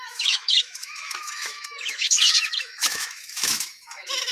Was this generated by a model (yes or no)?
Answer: yes